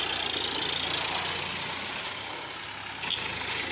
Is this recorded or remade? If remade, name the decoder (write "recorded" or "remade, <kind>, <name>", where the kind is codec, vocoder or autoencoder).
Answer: recorded